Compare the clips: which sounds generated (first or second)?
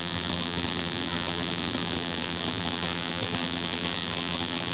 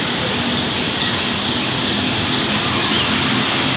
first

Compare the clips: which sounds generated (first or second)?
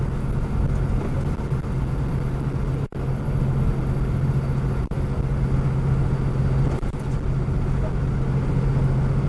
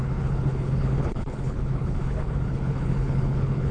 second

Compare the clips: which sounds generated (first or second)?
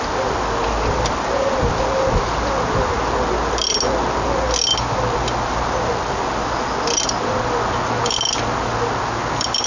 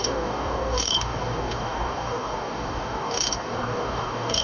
second